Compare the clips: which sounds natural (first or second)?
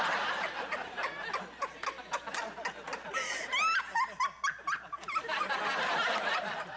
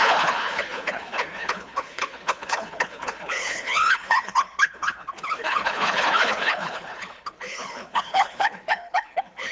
first